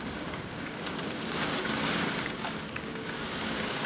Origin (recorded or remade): remade